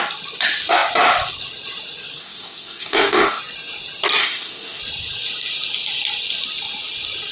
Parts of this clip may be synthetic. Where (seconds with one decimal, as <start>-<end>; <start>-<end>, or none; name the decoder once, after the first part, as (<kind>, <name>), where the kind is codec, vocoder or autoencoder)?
2.2-3.4 (codec, DAC); 4.2-4.8